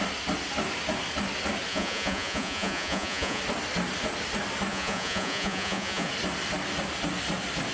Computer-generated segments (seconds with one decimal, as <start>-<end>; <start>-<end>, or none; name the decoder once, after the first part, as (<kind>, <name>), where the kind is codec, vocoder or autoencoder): 1.7-3.4 (vocoder, Vocos); 4.7-6.1